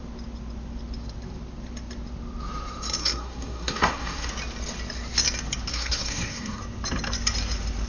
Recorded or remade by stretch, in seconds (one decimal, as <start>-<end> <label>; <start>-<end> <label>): 0.0-3.0 recorded; 3.0-4.3 remade; 4.3-5.7 recorded; 5.7-6.6 remade; 6.6-7.9 recorded